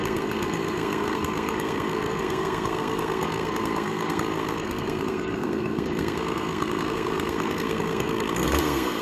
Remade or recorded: remade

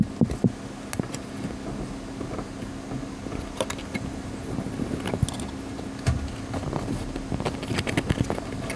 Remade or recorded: recorded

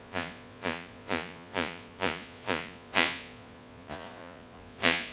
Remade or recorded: remade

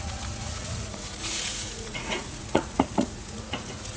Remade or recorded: remade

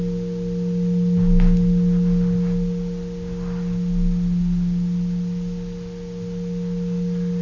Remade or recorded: recorded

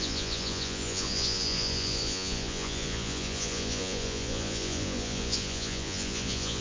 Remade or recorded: remade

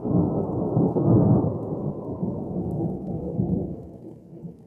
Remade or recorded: remade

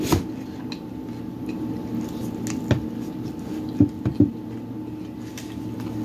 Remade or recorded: recorded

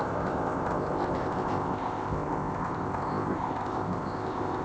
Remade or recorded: remade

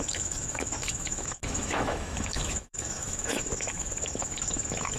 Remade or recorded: remade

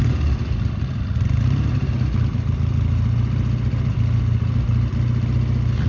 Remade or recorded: recorded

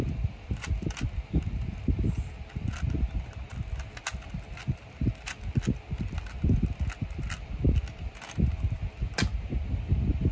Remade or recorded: recorded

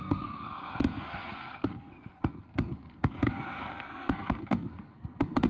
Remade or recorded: remade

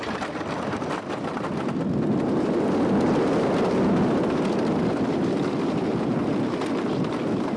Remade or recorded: recorded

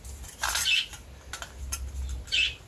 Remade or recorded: recorded